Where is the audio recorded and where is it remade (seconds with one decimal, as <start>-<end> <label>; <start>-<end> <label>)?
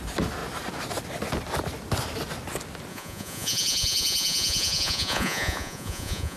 0.0-2.9 recorded; 2.9-6.4 remade